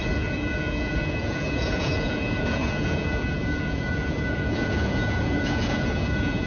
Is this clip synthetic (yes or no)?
yes